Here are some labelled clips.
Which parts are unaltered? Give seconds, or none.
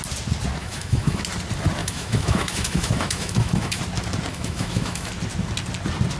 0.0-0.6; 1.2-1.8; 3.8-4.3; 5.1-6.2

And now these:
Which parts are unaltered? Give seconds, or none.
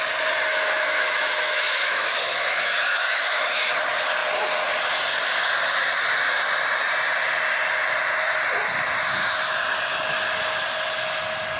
0.0-0.5; 3.7-9.1; 9.6-11.6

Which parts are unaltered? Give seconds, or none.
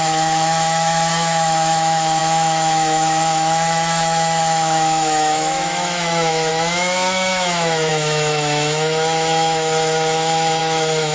none